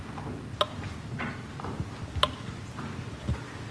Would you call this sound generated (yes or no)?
no